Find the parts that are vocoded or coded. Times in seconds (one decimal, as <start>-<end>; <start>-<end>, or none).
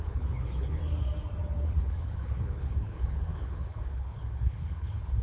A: 0.0-0.8; 1.6-5.2